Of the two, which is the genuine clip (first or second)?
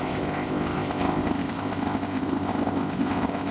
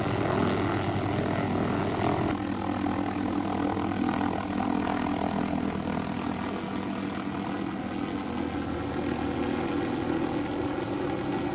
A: second